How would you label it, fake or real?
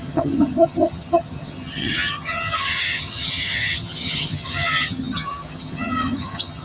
fake